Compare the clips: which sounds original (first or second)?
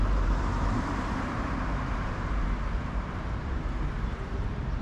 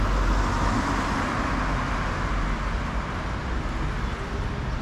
second